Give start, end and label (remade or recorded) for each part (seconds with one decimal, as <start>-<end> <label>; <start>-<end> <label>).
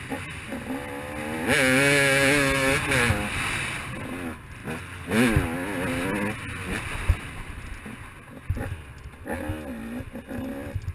0.0-10.9 recorded